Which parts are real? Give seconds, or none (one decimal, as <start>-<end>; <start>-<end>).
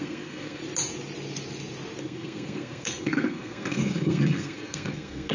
0.6-2.0